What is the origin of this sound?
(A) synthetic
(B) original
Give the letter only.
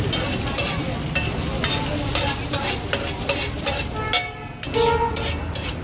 B